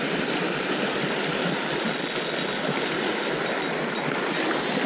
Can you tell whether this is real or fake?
real